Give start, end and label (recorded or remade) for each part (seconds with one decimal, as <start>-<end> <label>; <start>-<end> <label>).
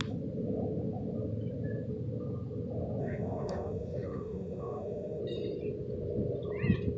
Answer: 0.0-3.0 recorded; 3.0-5.2 remade; 5.2-7.0 recorded